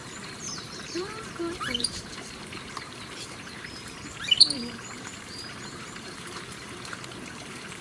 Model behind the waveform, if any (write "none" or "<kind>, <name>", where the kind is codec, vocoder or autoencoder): vocoder, BigVGAN v2